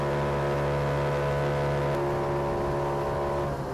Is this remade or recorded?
recorded